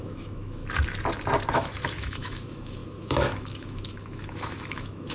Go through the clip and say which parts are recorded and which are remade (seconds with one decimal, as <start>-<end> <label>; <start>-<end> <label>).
0.0-0.6 remade; 0.6-1.5 recorded; 1.5-5.1 remade